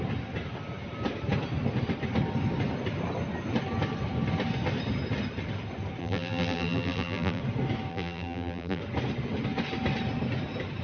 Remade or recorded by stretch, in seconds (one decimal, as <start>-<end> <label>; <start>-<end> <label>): 0.0-6.0 recorded; 6.0-7.4 remade; 7.4-7.9 recorded; 7.9-8.8 remade; 8.8-10.8 recorded